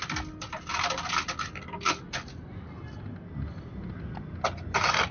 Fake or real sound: real